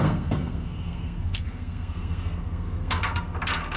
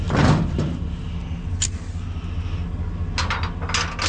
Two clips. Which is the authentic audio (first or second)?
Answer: second